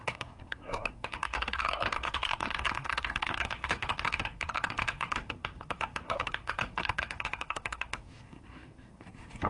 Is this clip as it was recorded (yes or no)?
no